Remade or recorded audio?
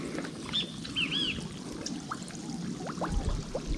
recorded